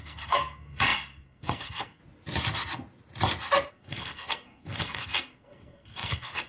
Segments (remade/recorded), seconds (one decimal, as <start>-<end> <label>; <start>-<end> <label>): 0.0-2.0 remade; 2.0-3.7 recorded; 3.7-6.5 remade